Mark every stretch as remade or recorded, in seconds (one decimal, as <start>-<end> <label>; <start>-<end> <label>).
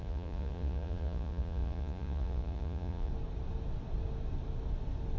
0.0-3.1 remade; 3.1-5.2 recorded